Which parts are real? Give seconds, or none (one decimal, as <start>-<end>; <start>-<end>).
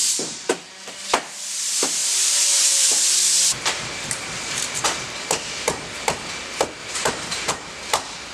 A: 0.6-2.0; 4.5-6.8; 7.5-8.3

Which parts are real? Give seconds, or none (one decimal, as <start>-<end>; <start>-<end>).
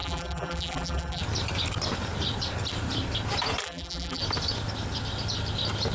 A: 1.2-3.6; 4.2-5.9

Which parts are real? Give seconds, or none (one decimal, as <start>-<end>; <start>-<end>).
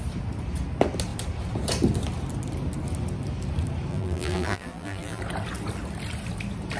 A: 0.0-3.9; 5.2-6.8